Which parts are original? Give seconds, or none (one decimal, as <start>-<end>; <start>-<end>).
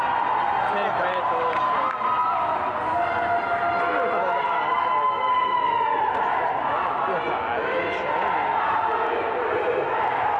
0.0-8.9; 9.6-10.4